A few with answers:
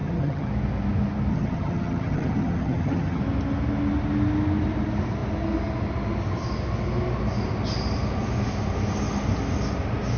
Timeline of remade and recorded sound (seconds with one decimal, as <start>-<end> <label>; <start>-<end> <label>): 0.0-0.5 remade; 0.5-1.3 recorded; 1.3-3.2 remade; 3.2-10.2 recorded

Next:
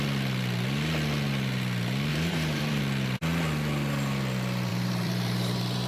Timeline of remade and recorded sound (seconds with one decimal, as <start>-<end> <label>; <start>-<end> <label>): 0.0-2.1 recorded; 2.1-2.8 remade; 2.8-4.7 recorded; 4.7-5.9 remade

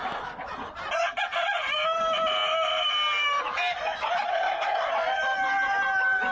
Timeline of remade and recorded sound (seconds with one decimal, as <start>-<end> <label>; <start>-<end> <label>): 0.0-4.3 recorded; 4.3-4.9 remade; 4.9-6.3 recorded